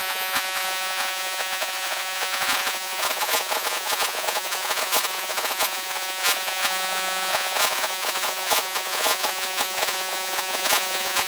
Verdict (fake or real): fake